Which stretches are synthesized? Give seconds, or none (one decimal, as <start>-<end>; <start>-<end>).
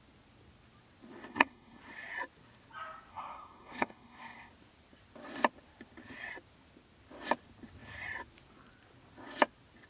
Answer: 1.3-1.8; 3.1-4.5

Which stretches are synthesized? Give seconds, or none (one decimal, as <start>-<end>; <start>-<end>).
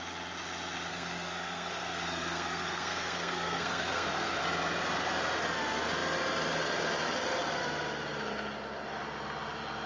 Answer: 0.9-4.4